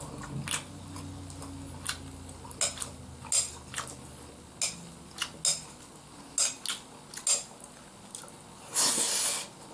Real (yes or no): yes